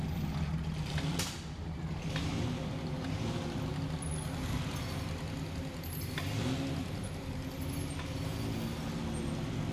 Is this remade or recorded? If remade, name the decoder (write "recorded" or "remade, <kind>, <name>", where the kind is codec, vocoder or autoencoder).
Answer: recorded